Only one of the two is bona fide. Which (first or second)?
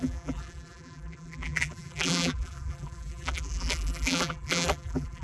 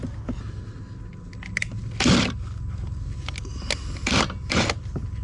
second